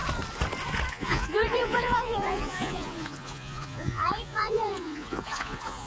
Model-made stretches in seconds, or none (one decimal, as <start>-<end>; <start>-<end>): 0.9-5.9